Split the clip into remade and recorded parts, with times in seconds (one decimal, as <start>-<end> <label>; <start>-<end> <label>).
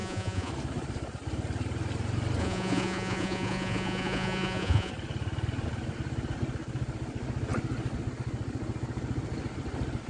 0.0-0.5 remade; 0.5-2.4 recorded; 2.4-4.9 remade; 4.9-10.1 recorded